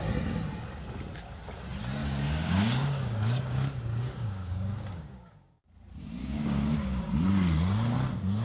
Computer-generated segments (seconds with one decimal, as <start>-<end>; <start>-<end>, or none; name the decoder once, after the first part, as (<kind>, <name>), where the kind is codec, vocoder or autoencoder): 2.0-5.6 (codec, DAC); 6.2-7.0